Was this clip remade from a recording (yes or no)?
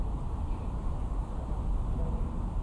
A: no